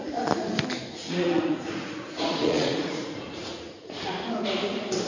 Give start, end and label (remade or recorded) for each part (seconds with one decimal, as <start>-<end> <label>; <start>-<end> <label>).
0.0-0.9 recorded; 0.9-4.0 remade; 4.0-5.1 recorded